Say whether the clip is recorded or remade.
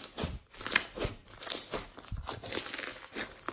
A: recorded